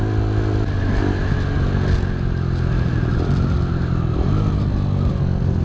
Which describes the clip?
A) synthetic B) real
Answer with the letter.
B